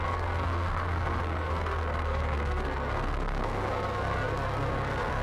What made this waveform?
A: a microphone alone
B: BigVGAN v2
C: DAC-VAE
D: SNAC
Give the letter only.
D